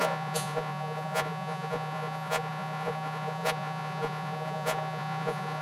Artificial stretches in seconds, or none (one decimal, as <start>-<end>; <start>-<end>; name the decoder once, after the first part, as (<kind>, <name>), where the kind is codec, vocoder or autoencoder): 0.0-5.6 (vocoder, Vocos)